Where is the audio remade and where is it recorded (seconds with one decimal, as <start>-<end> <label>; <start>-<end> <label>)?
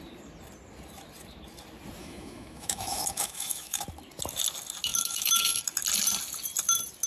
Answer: 0.0-2.0 recorded; 2.0-3.8 remade; 3.8-4.9 recorded; 4.9-5.6 remade; 5.6-7.1 recorded